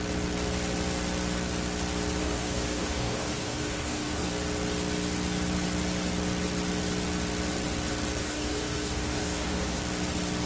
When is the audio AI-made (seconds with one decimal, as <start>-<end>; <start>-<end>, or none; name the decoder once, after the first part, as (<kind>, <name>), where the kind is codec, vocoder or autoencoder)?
2.2-4.3 (codec, DAC); 8.2-9.8